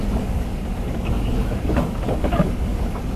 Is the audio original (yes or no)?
no